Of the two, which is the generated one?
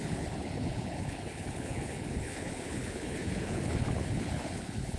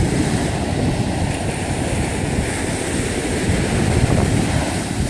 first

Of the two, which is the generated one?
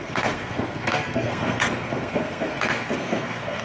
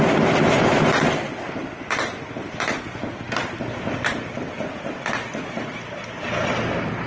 first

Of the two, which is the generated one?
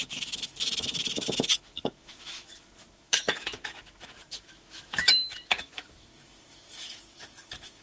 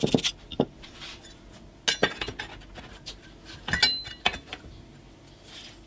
first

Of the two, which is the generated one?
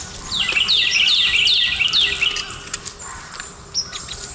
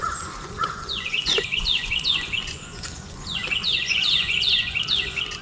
second